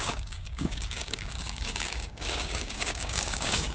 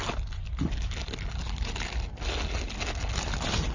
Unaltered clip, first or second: second